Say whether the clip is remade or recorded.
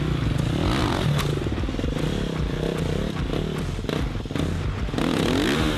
recorded